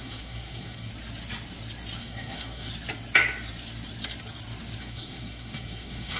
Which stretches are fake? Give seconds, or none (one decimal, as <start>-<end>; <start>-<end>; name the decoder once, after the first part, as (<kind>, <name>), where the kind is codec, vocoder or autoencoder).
0.0-0.9 (codec, SNAC); 2.0-2.7; 4.8-6.2